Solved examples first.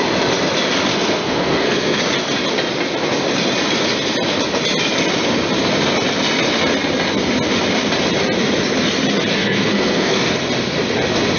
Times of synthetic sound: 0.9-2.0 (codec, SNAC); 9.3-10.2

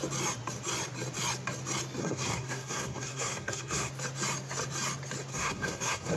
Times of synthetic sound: 2.0-3.9 (codec, SNAC); 5.3-6.2

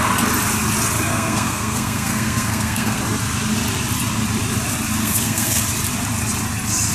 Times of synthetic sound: 1.1-3.0 (codec, SNAC); 5.0-5.6

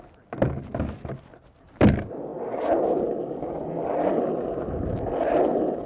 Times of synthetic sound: none

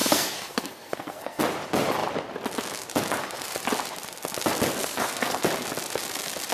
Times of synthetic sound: 0.0-1.4 (codec, SNAC); 4.8-5.4

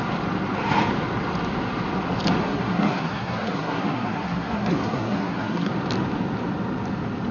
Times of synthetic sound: 2.4-5.7 (codec, SNAC)